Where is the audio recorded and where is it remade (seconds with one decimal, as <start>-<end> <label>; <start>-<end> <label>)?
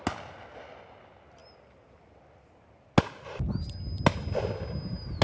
0.0-5.2 recorded